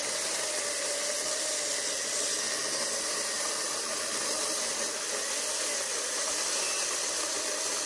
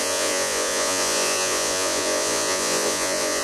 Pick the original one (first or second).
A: first